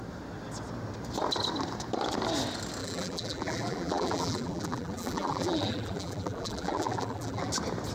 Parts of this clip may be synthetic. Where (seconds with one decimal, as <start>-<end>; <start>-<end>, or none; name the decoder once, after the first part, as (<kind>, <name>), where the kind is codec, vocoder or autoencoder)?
2.8-7.5 (vocoder, BigVGAN v2)